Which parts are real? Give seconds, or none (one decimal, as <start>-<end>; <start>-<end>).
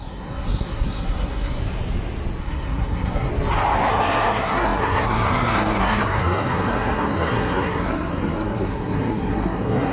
1.6-2.4; 3.3-3.9